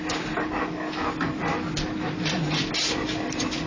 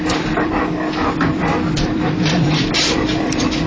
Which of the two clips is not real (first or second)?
second